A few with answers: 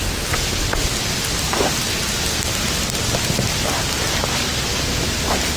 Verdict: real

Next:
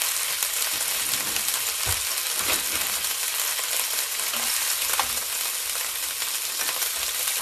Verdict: real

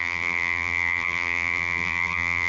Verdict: fake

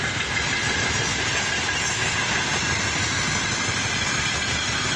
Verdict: real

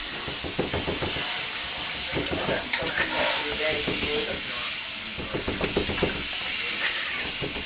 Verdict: real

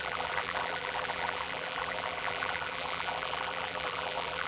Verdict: fake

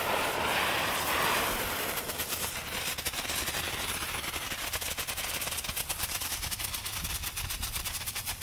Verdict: fake